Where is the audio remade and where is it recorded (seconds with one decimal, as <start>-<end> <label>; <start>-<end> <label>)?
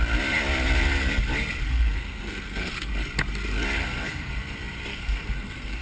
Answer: 0.0-1.6 recorded; 1.6-2.9 remade; 2.9-3.8 recorded; 3.8-4.3 remade; 4.3-4.9 recorded; 4.9-5.8 remade